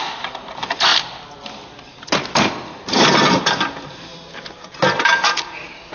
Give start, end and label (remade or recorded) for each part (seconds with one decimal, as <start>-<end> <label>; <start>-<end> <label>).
0.0-5.9 recorded